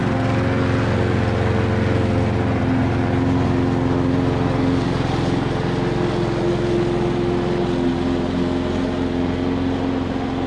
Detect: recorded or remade recorded